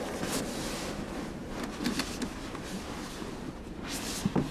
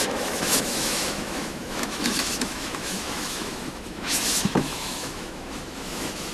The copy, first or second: second